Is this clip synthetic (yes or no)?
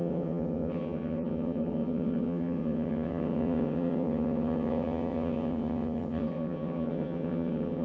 yes